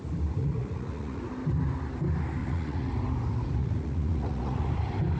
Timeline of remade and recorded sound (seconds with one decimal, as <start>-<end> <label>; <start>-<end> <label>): 0.0-0.4 recorded; 0.4-1.2 remade; 1.2-2.4 recorded; 2.4-2.9 remade; 2.9-3.6 recorded; 3.6-4.7 remade; 4.7-5.2 recorded